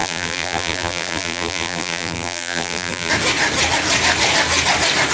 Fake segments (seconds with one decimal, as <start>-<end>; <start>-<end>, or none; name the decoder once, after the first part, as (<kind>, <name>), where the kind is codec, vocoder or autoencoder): 0.0-3.1 (vocoder, BigVGAN v2)